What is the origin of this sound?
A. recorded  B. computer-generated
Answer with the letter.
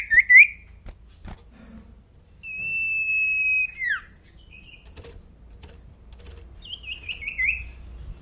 A